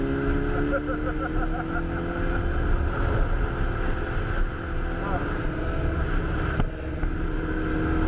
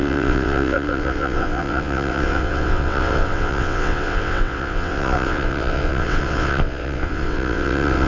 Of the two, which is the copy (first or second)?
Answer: second